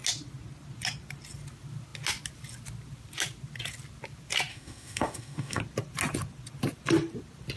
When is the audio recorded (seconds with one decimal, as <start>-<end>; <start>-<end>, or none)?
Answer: 0.0-4.5; 5.6-7.6